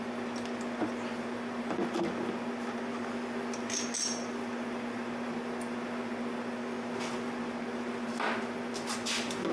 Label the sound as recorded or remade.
recorded